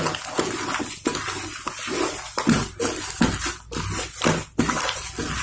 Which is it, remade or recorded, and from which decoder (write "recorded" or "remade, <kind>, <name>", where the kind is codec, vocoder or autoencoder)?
recorded